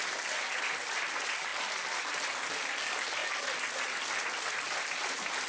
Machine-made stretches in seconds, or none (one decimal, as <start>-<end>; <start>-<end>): none